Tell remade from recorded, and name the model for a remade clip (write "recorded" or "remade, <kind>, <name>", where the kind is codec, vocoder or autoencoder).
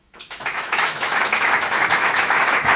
remade, autoencoder, DAC-VAE